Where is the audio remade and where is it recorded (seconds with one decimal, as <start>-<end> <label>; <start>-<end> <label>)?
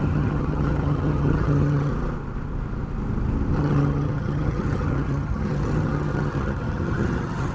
0.0-1.9 remade; 1.9-3.5 recorded; 3.5-7.5 remade